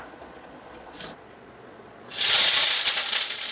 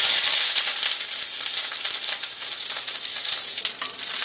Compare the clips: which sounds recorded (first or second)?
second